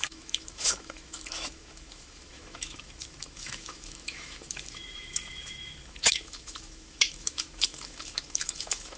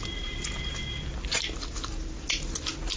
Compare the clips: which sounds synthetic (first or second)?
first